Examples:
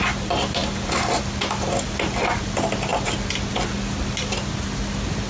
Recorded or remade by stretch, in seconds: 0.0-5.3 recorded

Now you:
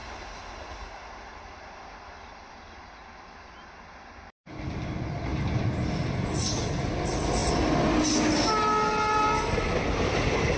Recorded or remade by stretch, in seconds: 0.0-10.6 recorded

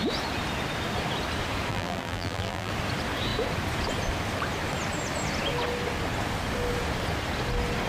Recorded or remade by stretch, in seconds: 0.0-1.7 recorded; 1.7-2.7 remade; 2.7-7.9 recorded

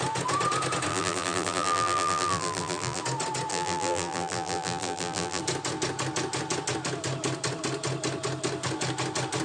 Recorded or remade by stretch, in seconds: 0.0-0.9 recorded; 0.9-3.0 remade; 3.0-3.5 recorded; 3.5-5.4 remade; 5.4-9.4 recorded

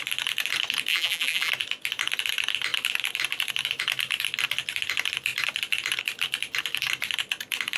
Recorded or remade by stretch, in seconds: 0.0-0.9 recorded; 0.9-1.5 remade; 1.5-7.8 recorded

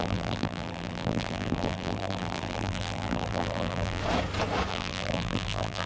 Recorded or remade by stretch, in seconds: 0.0-4.0 remade; 4.0-4.7 recorded; 4.7-5.9 remade

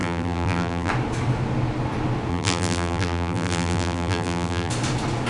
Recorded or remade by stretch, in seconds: 0.0-0.9 remade; 0.9-2.3 recorded; 2.3-4.7 remade; 4.7-5.3 recorded